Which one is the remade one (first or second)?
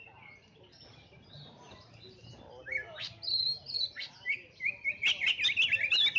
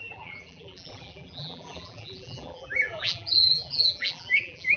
second